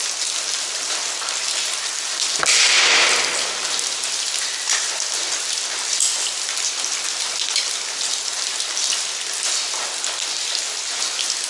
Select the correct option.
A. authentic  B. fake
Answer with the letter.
A